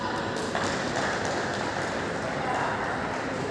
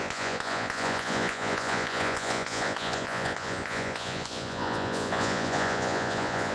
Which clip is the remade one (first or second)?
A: second